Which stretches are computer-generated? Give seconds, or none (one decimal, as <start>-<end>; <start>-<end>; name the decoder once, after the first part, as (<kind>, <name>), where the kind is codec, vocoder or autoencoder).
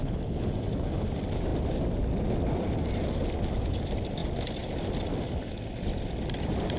0.0-0.5 (codec, HILCodec)